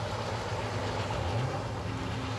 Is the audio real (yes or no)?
yes